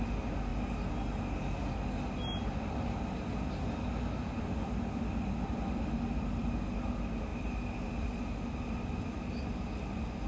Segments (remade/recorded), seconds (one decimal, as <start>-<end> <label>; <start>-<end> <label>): 0.0-10.3 recorded